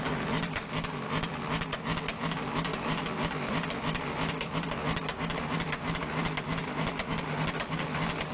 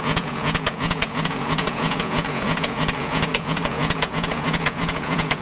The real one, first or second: first